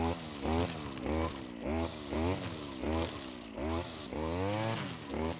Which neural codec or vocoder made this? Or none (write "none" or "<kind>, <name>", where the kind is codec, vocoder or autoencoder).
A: none